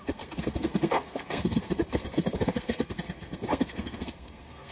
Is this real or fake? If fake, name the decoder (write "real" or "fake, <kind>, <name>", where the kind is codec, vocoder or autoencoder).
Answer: fake, codec, SNAC